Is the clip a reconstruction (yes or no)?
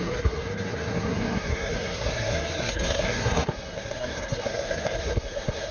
yes